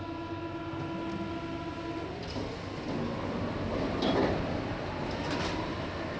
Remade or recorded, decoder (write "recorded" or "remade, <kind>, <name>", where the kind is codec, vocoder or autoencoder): recorded